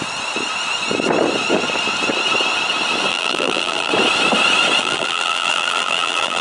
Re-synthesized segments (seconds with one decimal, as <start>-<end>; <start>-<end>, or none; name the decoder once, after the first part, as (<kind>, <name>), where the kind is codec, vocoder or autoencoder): 3.1-3.9 (vocoder, BigVGAN v2); 4.8-6.4